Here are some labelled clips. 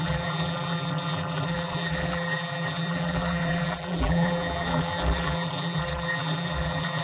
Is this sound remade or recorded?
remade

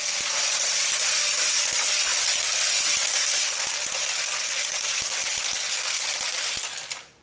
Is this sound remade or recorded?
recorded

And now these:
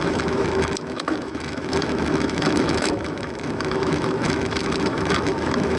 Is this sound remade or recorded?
remade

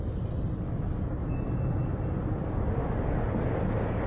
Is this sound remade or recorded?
recorded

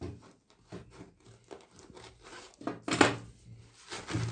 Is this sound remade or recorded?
recorded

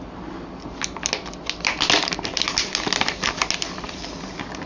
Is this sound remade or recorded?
recorded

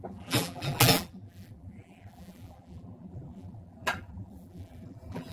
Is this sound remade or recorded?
remade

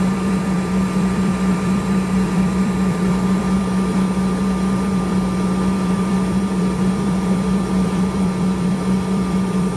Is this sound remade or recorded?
remade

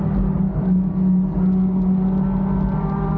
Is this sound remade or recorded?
recorded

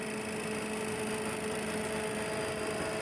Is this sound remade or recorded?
recorded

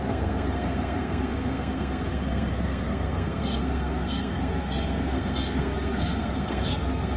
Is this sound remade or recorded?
remade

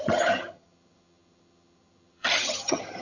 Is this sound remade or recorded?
remade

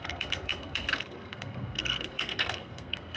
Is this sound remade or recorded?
remade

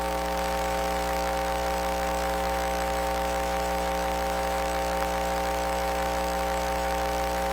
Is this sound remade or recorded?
remade